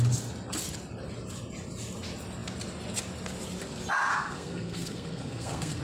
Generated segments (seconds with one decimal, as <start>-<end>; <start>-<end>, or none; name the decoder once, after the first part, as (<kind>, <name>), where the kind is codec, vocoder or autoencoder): 4.1-5.8 (codec, SNAC)